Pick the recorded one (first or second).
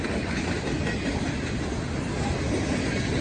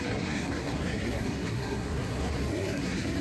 first